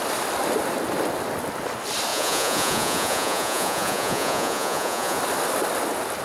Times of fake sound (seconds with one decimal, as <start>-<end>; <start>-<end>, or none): 2.1-5.2